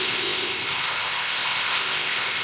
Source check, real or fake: fake